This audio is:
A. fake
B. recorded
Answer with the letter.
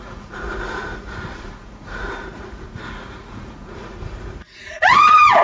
A